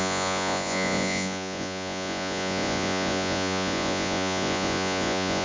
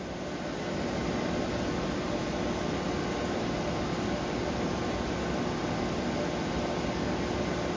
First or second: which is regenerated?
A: first